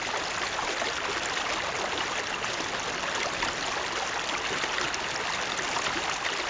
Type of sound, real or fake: real